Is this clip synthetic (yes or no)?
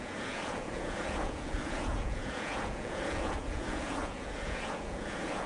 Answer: yes